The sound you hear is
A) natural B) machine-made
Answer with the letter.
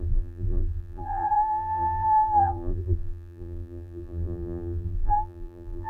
B